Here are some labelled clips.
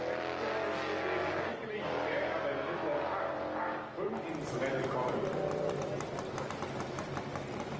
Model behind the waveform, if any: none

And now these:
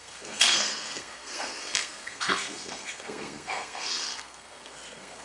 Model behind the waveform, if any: codec, SNAC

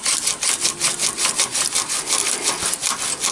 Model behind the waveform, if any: none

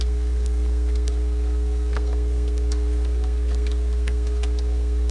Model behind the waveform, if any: codec, SNAC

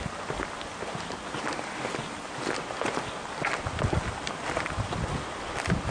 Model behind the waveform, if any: none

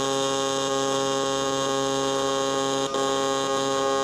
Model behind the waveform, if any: none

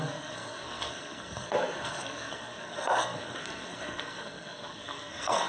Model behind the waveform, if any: codec, SNAC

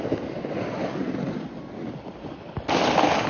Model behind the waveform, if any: none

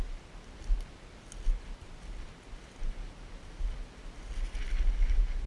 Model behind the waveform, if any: none